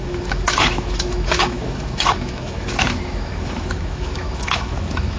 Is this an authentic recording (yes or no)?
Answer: no